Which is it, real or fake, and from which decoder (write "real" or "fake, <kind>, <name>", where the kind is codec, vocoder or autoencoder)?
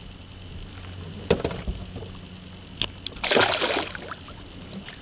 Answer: real